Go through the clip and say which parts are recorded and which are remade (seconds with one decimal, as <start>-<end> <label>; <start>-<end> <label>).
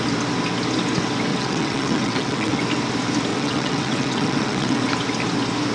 0.0-1.3 recorded; 1.3-2.6 remade; 2.6-3.3 recorded; 3.3-4.8 remade; 4.8-5.7 recorded